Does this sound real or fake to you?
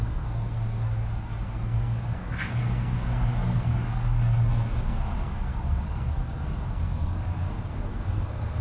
fake